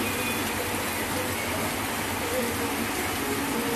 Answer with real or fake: real